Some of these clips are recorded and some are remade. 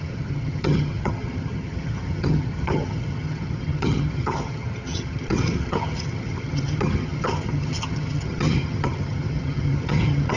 remade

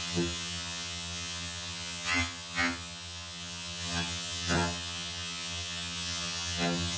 remade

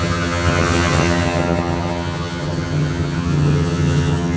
remade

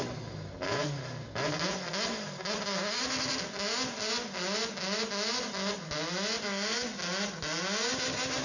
recorded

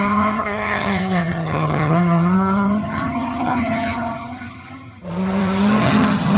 remade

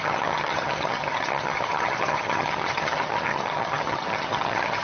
remade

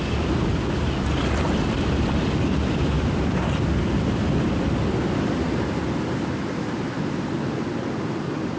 recorded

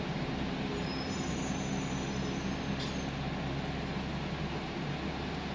recorded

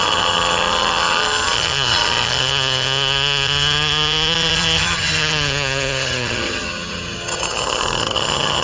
remade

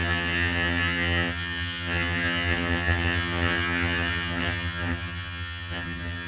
remade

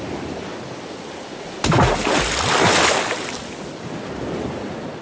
recorded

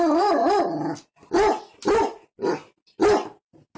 recorded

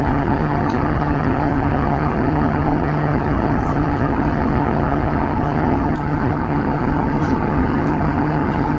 remade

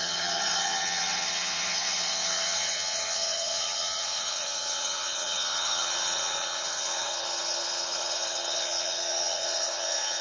remade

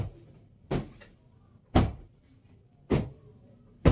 recorded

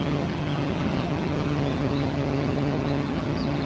remade